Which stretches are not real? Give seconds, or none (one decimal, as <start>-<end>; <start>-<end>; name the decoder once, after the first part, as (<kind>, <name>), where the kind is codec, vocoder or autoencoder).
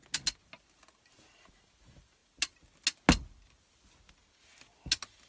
none